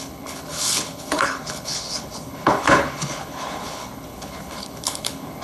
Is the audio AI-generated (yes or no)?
yes